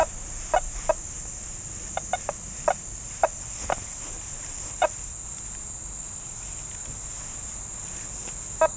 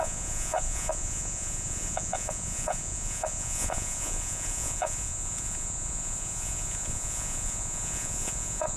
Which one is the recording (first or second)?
first